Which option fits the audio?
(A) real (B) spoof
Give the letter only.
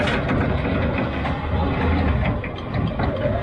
A